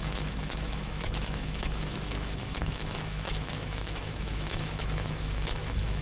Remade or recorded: remade